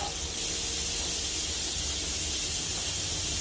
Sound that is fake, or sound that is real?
real